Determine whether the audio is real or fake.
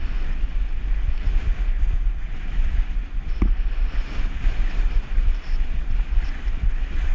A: real